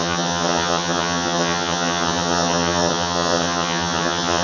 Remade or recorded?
remade